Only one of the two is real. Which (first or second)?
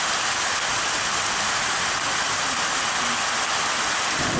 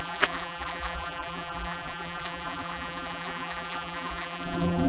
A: first